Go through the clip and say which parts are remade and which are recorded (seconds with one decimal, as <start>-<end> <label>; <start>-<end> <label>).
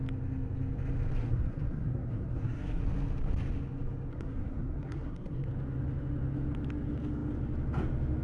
0.0-1.2 recorded; 1.2-2.8 remade; 2.8-4.1 recorded; 4.1-5.5 remade; 5.5-8.2 recorded